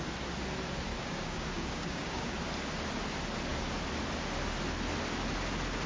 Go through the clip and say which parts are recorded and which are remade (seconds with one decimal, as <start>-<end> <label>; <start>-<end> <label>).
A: 0.0-0.9 recorded; 0.9-2.4 remade; 2.4-5.9 recorded